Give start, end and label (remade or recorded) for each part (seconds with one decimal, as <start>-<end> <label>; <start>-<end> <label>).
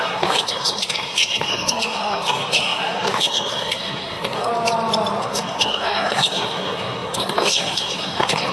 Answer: 0.0-4.5 remade; 4.5-5.2 recorded; 5.2-8.5 remade